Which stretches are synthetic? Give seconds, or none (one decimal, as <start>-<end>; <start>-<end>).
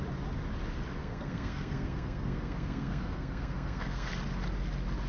1.0-4.1